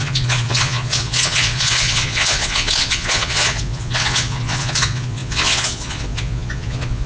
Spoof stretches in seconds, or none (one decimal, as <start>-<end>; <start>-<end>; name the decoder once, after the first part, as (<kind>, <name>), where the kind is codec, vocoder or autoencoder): 0.0-7.1 (vocoder, Vocos)